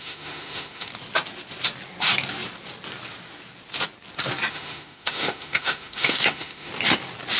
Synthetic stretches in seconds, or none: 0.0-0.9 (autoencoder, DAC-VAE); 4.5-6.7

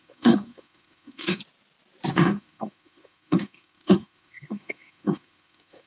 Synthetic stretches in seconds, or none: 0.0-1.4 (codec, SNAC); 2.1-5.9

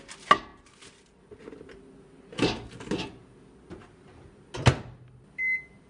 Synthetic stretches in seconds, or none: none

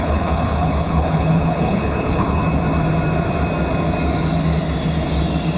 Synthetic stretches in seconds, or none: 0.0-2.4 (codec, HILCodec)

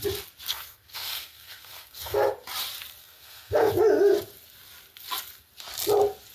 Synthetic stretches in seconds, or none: 0.5-2.3 (codec, SNAC); 3.0-3.7

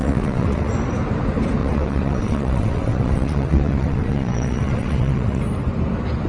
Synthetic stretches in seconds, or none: 0.0-0.7 (vocoder, WaveNeXt); 1.6-5.4

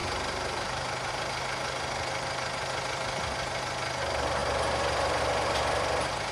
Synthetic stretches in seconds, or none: none